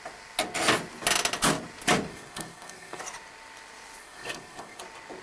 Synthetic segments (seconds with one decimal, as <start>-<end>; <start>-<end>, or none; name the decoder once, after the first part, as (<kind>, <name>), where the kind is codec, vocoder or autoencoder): 2.1-3.0 (codec, SNAC); 4.0-4.8